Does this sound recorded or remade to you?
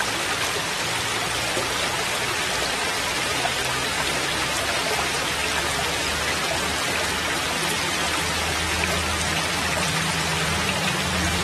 recorded